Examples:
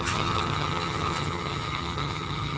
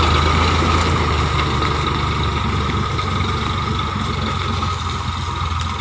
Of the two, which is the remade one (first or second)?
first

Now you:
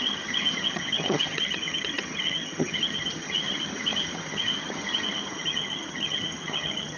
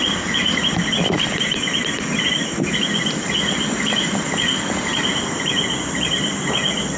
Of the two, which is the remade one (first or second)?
first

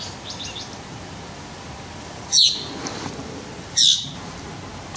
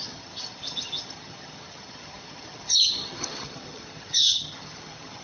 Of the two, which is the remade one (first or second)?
second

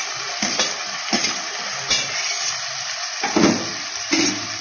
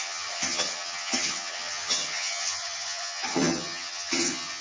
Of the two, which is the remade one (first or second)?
second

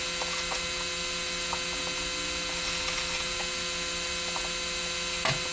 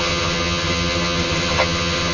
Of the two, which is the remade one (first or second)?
second